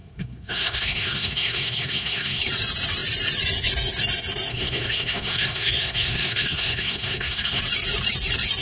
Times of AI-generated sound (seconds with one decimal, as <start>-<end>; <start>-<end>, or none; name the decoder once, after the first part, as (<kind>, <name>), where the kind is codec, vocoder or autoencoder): 0.0-2.4 (codec, SNAC); 4.5-7.6